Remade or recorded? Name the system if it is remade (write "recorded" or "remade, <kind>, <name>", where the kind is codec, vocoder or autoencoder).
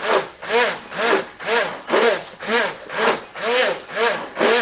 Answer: recorded